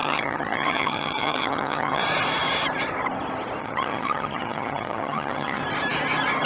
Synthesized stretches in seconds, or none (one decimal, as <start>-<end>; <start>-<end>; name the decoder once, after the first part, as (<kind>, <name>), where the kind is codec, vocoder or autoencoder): 0.0-2.0 (vocoder, HiFi-GAN); 3.6-5.6